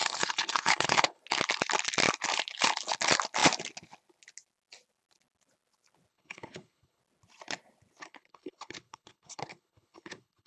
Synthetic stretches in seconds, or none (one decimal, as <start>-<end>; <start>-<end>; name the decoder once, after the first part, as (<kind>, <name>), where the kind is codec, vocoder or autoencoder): 0.0-1.2 (codec, HILCodec); 6.1-7.0; 8.0-10.5